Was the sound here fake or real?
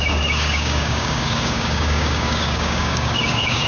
fake